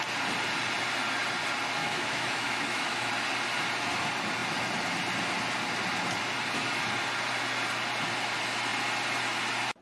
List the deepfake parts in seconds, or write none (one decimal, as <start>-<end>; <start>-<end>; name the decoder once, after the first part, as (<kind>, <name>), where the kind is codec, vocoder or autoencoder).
1.8-3.1 (autoencoder, DAC-VAE)

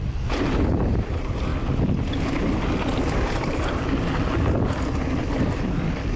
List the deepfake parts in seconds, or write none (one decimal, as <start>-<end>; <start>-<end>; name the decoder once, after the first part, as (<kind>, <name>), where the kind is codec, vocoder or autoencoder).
none

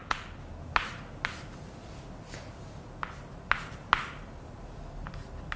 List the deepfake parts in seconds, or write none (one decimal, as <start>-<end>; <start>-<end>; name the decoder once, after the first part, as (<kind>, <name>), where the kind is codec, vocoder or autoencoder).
none